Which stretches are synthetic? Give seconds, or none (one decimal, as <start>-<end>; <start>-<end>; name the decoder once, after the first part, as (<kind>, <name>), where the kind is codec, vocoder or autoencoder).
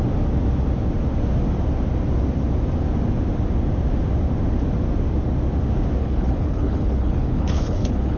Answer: 6.0-8.2 (codec, HILCodec)